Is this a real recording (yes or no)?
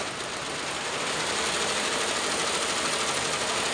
yes